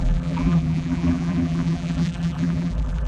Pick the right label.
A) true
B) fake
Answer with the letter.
B